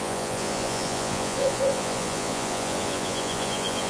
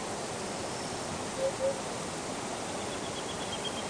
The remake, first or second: first